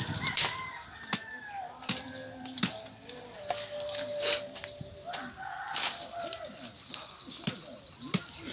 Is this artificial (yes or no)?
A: no